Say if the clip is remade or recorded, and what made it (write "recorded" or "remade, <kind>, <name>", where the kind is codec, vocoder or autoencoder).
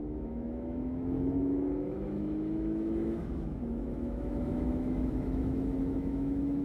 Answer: remade, autoencoder, DAC-VAE